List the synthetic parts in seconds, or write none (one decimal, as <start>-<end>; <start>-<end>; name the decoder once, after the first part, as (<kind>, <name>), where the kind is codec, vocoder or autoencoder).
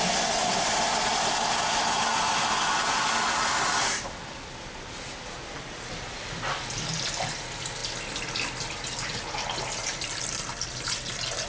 none